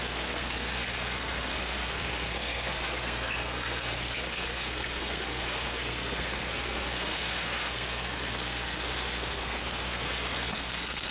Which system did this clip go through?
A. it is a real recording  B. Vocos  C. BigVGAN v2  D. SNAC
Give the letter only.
D